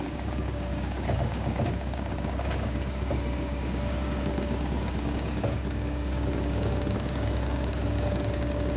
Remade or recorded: remade